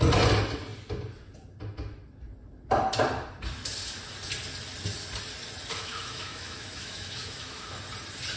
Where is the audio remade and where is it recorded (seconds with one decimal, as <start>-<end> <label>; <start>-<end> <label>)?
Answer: 0.0-5.7 recorded; 5.7-7.8 remade; 7.8-8.4 recorded

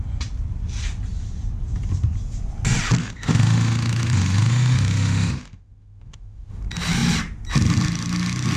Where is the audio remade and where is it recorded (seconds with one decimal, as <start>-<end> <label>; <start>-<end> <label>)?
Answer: 0.0-3.0 recorded; 3.0-6.6 remade; 6.6-8.6 recorded

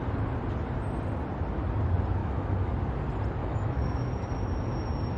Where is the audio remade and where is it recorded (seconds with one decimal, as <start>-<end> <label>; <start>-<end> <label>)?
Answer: 0.0-2.2 recorded; 2.2-2.7 remade; 2.7-3.4 recorded; 3.4-4.1 remade; 4.1-5.2 recorded

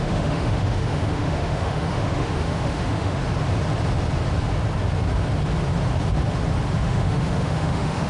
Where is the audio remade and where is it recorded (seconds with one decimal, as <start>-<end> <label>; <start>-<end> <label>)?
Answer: 0.0-3.2 remade; 3.2-6.8 recorded; 6.8-8.1 remade

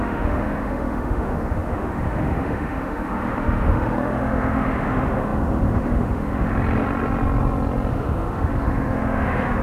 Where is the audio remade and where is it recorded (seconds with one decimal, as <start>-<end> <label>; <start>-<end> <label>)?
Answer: 0.0-6.5 remade; 6.5-7.9 recorded; 7.9-9.6 remade

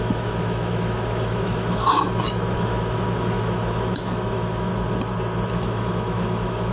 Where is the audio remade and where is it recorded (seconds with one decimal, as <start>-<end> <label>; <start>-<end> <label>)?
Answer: 0.0-4.7 remade; 4.7-5.6 recorded; 5.6-6.7 remade

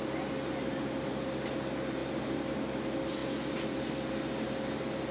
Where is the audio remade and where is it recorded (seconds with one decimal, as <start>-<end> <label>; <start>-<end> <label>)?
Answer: 0.0-5.1 recorded

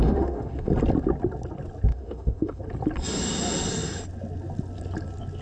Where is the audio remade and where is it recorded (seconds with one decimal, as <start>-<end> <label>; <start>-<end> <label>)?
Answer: 0.0-0.7 remade; 0.7-1.9 recorded; 1.9-2.6 remade; 2.6-5.4 recorded